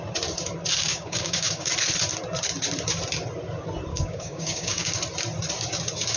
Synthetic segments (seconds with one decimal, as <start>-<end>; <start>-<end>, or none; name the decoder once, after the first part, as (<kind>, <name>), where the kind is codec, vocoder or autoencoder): 0.8-1.7 (codec, DAC); 3.9-5.0